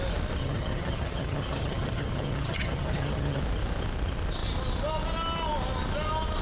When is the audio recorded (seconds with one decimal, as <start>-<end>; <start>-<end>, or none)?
0.0-0.4; 3.4-6.4